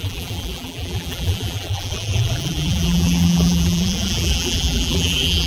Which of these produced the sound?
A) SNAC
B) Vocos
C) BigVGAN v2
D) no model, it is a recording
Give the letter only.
C